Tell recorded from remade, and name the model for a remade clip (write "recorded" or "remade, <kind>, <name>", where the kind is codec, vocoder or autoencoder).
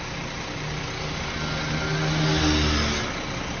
recorded